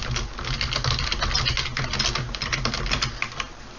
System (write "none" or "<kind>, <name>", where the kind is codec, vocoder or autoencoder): none